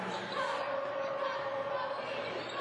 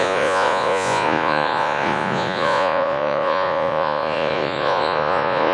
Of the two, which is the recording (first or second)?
first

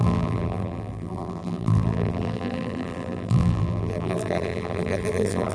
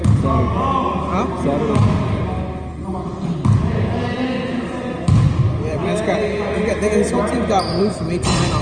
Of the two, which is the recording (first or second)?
second